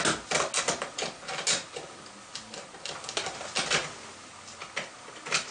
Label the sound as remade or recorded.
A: recorded